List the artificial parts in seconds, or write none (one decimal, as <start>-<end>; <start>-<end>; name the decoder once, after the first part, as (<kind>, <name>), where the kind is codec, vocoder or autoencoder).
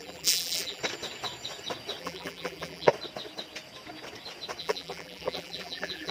0.0-0.8 (vocoder, BigVGAN v2); 2.0-2.9; 4.6-6.1